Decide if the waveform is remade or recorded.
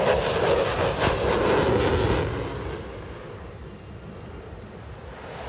recorded